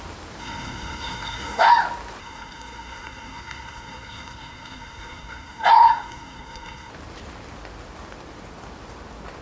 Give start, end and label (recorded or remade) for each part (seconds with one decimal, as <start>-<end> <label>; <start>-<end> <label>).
0.0-0.4 recorded; 0.4-1.7 remade; 1.7-2.2 recorded; 2.2-6.9 remade; 6.9-9.4 recorded